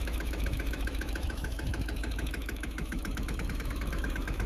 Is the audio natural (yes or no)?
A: no